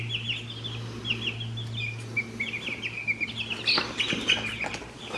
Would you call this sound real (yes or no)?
yes